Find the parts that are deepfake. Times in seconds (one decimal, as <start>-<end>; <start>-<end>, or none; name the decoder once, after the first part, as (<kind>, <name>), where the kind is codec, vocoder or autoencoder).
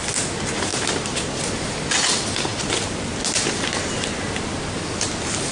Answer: none